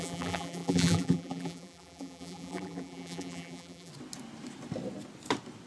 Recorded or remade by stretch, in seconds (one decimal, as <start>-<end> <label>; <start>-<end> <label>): 0.0-3.9 remade; 3.9-5.7 recorded